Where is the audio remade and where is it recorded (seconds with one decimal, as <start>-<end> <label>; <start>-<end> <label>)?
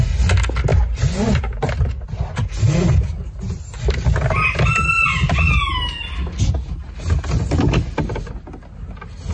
0.0-9.3 recorded